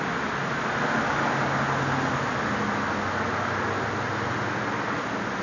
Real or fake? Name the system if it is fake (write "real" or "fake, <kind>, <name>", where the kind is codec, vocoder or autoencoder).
real